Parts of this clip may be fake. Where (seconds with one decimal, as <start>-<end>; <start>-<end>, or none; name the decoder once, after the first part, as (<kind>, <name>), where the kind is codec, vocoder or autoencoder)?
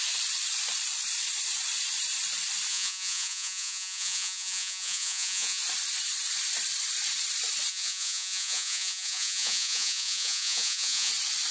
2.7-5.6 (vocoder, Vocos); 7.7-11.1